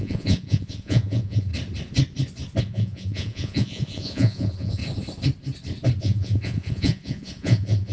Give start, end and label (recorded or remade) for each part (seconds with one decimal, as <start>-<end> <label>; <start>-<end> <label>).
0.0-1.5 remade; 1.5-2.6 recorded; 2.6-4.8 remade; 4.8-6.0 recorded; 6.0-7.9 remade